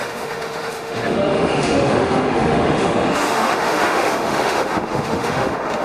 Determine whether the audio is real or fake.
fake